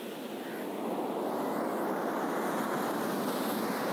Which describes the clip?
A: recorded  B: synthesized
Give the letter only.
A